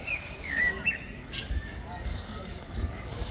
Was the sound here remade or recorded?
remade